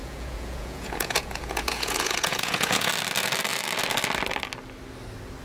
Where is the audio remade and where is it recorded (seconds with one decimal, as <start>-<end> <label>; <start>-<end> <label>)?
0.0-2.9 remade; 2.9-5.4 recorded